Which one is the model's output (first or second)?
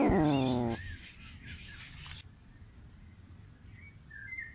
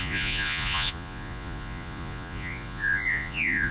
second